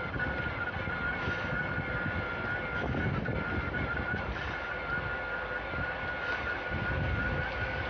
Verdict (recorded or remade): recorded